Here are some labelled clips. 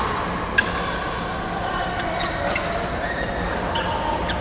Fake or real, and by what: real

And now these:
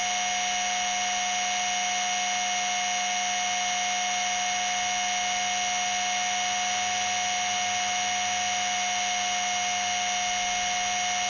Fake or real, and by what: real